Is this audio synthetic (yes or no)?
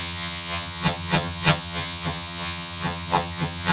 yes